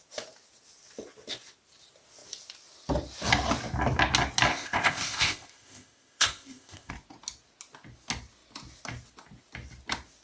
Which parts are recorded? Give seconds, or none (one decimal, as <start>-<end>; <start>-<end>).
0.0-4.5; 6.9-10.2